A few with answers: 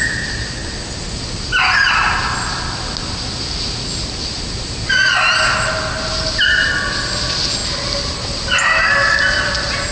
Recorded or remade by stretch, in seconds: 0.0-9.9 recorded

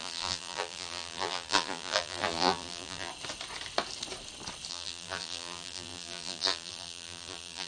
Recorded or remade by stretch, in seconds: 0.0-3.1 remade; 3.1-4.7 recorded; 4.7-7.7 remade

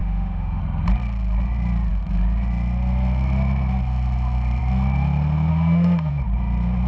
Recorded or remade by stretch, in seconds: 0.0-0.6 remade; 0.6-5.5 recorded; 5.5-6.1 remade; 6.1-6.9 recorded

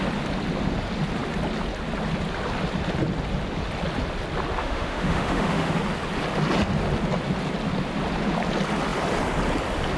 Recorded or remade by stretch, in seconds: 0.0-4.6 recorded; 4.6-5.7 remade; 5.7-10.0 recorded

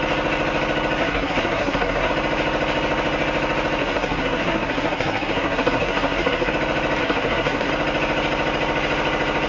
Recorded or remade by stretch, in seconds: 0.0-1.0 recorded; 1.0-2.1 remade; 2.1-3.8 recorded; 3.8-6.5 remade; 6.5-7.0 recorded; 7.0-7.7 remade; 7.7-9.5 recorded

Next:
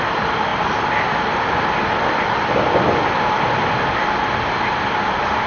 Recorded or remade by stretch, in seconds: 0.0-5.5 recorded

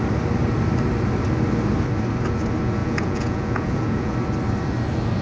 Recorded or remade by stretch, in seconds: 0.0-2.8 recorded; 2.8-4.1 remade; 4.1-5.2 recorded

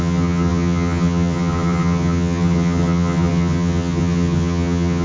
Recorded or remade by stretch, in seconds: 0.0-5.0 remade